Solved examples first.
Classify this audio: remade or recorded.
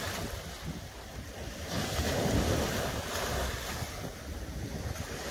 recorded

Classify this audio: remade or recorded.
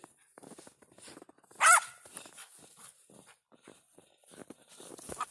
recorded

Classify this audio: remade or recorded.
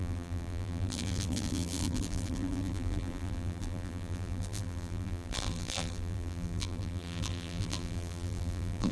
remade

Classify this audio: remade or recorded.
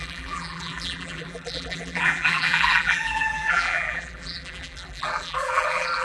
remade